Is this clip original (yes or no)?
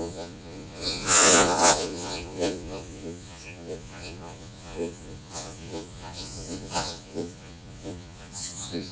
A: no